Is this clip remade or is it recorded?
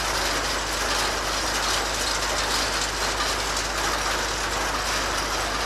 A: recorded